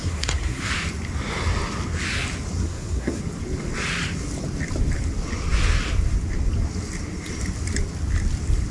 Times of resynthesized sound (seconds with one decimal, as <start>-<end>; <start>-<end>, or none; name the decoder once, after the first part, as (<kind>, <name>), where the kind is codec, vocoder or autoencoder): 0.0-0.7 (codec, SNAC); 2.6-3.2